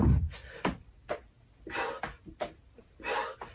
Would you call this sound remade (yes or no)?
no